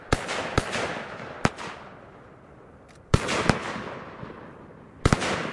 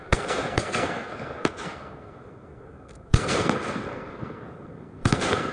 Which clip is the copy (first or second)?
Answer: second